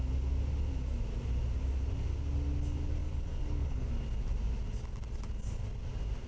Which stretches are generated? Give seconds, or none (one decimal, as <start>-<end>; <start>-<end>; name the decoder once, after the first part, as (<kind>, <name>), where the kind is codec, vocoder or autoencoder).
3.0-3.9 (codec, DAC)